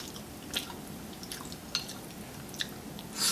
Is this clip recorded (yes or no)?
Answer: yes